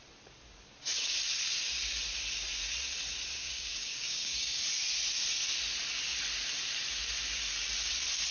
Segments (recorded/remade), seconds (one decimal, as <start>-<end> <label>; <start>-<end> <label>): 0.0-3.4 recorded; 3.4-4.6 remade; 4.6-8.3 recorded